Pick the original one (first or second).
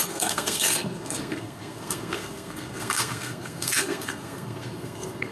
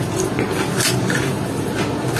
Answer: second